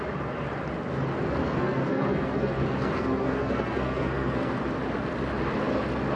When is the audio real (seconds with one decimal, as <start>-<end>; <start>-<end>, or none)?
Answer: 0.0-1.4; 4.6-6.2